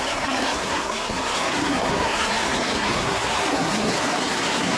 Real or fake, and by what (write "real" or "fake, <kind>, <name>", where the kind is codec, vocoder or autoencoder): fake, codec, SNAC